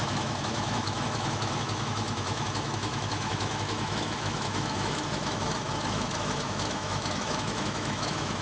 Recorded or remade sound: remade